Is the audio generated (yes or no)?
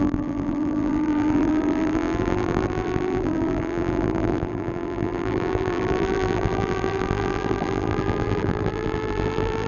yes